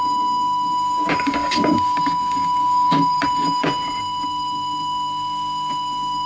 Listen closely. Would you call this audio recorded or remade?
remade